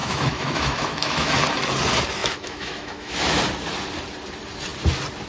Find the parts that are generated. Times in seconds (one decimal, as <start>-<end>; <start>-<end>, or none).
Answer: 0.0-1.3; 2.2-3.2